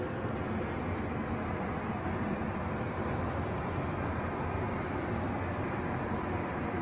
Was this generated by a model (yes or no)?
no